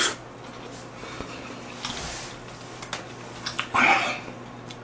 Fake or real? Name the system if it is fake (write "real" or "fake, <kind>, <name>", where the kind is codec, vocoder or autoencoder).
real